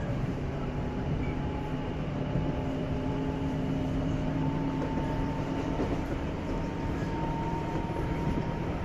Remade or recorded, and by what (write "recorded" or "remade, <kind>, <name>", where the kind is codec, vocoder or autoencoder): remade, vocoder, BigVGAN v2